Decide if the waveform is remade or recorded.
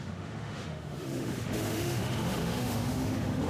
remade